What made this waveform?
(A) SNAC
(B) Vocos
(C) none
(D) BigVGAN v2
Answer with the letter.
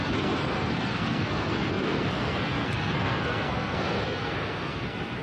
A